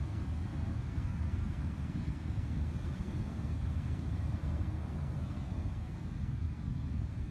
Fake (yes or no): yes